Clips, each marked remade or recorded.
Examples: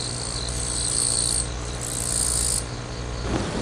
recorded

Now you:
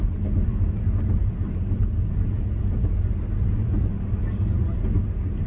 recorded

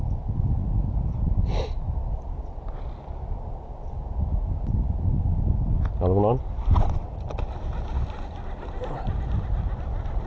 recorded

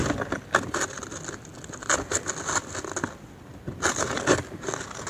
recorded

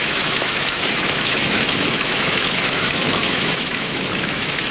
remade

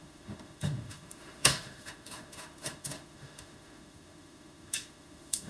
remade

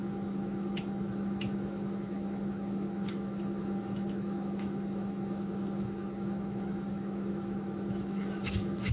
remade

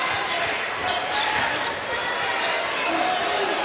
recorded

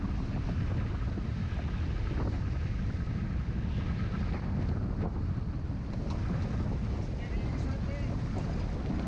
recorded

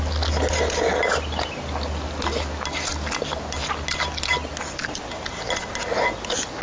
recorded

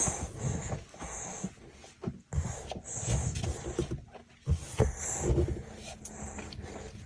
recorded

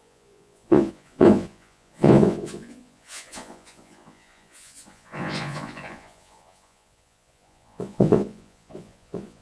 remade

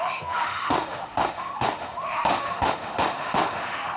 remade